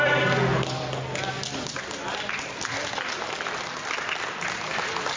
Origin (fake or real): real